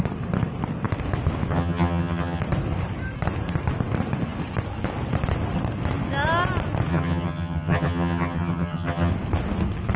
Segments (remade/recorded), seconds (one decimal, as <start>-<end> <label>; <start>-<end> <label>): 0.0-1.5 recorded; 1.5-2.4 remade; 2.4-6.9 recorded; 6.9-9.1 remade; 9.1-10.0 recorded